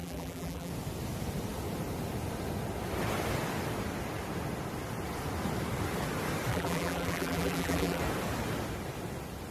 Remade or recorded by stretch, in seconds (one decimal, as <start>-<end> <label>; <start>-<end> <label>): 0.0-0.7 remade; 0.7-6.5 recorded; 6.5-8.0 remade; 8.0-9.5 recorded